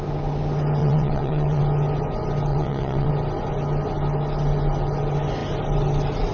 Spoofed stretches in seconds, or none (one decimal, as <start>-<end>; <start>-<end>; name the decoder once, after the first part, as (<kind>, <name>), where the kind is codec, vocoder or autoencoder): 0.8-1.6 (vocoder, WaveNeXt); 2.5-3.1